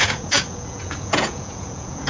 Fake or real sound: fake